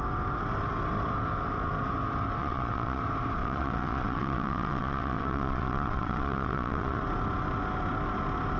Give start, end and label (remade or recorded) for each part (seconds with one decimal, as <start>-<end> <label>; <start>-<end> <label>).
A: 0.0-2.4 recorded; 2.4-3.0 remade; 3.0-3.4 recorded; 3.4-7.0 remade; 7.0-8.6 recorded